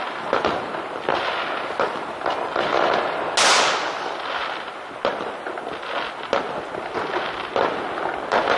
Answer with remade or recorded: recorded